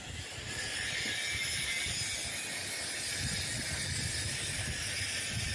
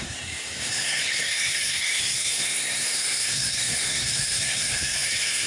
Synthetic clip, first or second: second